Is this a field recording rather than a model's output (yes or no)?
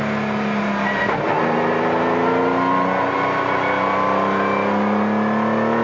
yes